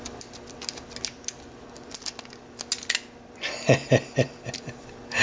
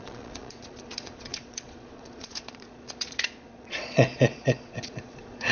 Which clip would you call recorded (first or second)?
first